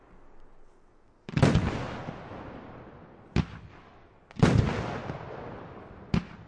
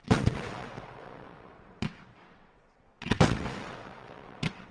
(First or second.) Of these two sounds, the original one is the first